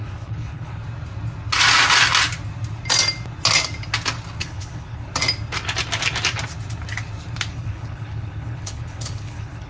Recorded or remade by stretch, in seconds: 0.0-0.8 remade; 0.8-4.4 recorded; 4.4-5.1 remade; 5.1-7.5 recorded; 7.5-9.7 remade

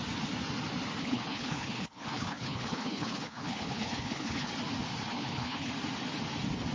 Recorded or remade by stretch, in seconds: 0.0-1.0 recorded; 1.0-4.5 remade; 4.5-5.1 recorded; 5.1-5.7 remade; 5.7-6.7 recorded

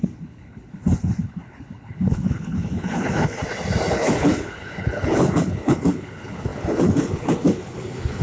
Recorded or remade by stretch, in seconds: 0.0-3.4 remade; 3.4-3.9 recorded; 3.9-8.2 remade

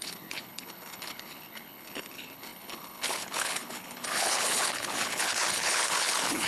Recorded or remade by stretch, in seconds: 0.0-6.5 remade

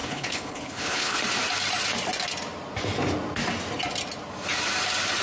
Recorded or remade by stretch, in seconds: 0.0-1.2 remade; 1.2-5.2 recorded

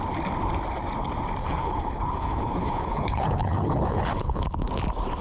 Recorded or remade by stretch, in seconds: 0.0-1.4 recorded; 1.4-4.5 remade; 4.5-5.2 recorded

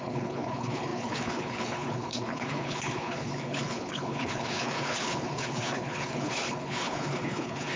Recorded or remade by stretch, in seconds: 0.0-7.8 remade